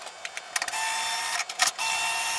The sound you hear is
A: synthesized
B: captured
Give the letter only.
B